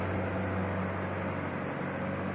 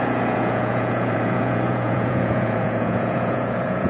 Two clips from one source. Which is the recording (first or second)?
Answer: first